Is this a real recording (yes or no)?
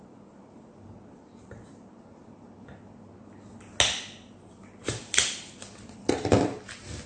yes